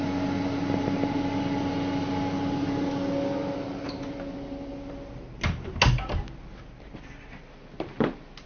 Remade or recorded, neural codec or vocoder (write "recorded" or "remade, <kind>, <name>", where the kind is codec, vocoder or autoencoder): recorded